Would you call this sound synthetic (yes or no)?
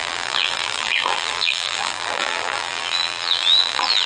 yes